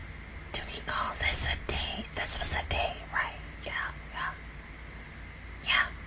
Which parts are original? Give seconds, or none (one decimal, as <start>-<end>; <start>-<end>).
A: 0.0-6.1